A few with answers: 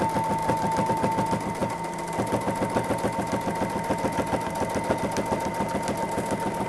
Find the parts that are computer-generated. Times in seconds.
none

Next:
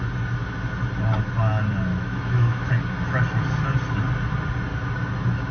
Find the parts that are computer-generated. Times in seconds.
1.9-2.7 (autoencoder, DAC-VAE)